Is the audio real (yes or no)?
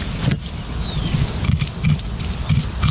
yes